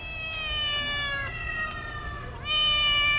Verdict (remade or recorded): recorded